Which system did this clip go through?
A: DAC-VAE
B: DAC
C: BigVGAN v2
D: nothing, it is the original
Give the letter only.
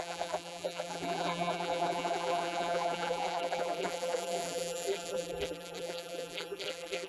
C